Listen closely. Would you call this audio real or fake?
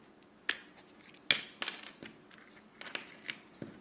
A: real